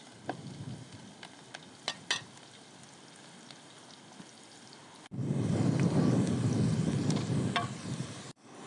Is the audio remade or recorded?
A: recorded